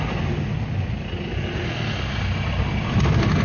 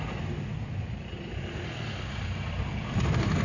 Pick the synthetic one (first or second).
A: second